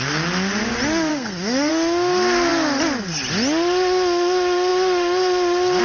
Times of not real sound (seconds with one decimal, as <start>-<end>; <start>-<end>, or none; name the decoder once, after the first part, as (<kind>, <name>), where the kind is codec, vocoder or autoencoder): 1.1-1.7 (codec, SNAC)